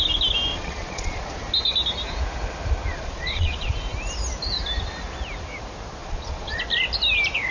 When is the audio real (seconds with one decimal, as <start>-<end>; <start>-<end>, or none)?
0.0-0.5; 1.3-2.9; 3.7-6.0; 6.6-7.5